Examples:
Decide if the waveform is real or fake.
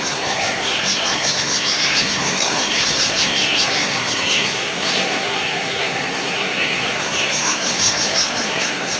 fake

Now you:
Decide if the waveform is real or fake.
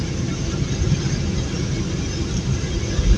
real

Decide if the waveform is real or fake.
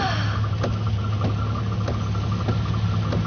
real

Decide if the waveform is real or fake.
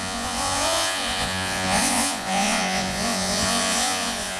fake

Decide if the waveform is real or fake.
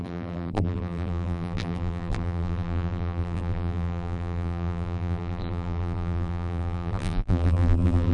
fake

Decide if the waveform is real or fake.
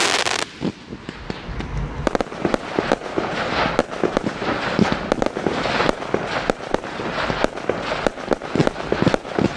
real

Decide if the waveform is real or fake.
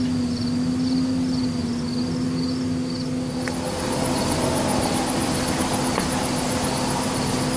real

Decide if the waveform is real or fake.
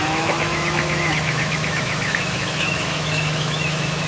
fake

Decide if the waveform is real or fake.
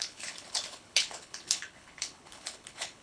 fake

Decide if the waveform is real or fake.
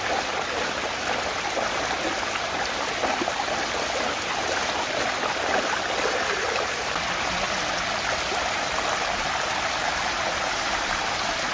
real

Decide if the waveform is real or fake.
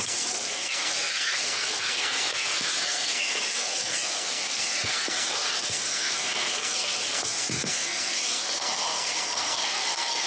fake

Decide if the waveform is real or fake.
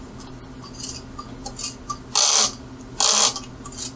real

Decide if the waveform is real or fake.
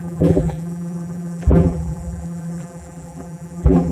fake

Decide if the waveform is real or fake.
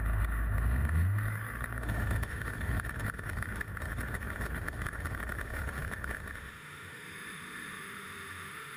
fake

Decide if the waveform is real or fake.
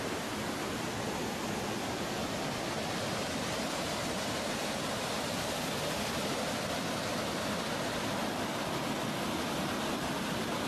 real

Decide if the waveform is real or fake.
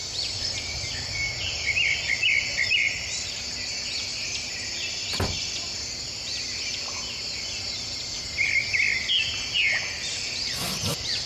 real